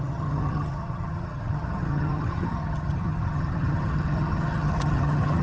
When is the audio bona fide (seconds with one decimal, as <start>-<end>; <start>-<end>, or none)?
none